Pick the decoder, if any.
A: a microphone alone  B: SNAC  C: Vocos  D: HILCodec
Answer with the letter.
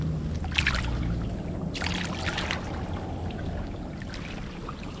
A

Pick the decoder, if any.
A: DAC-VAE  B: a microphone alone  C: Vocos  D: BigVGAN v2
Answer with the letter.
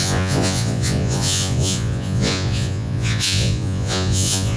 C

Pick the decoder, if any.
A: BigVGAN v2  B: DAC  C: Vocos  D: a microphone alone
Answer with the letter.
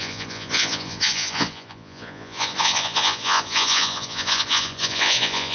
C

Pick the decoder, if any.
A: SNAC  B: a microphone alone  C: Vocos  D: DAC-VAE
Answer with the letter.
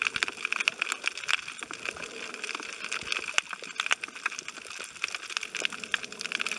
B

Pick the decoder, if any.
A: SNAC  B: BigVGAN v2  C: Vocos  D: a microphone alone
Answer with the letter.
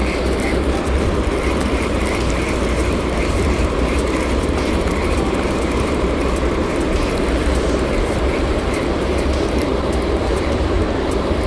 B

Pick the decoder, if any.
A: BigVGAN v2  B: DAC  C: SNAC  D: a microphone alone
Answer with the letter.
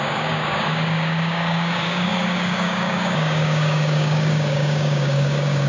B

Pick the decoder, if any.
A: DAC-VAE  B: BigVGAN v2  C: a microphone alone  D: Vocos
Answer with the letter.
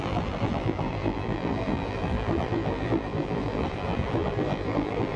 B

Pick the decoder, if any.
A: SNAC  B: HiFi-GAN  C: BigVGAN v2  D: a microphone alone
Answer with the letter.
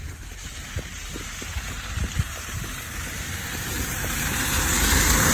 C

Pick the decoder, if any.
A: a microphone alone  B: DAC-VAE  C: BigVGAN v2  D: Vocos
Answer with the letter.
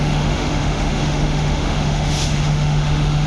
B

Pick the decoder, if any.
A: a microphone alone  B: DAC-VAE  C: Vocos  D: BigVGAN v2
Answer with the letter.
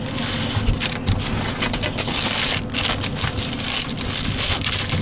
A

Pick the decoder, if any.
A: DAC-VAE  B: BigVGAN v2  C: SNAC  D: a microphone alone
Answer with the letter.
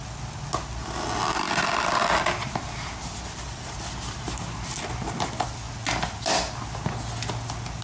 D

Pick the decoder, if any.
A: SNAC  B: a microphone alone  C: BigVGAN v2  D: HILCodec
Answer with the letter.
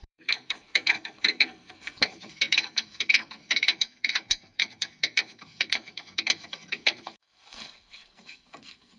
A